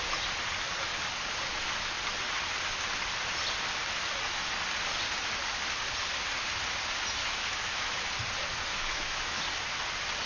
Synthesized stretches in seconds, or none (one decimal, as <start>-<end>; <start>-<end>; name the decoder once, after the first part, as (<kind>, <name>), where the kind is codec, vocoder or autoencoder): 7.2-7.9 (autoencoder, DAC-VAE); 8.7-9.4